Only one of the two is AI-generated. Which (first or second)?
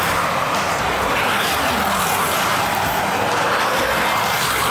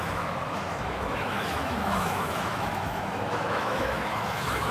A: second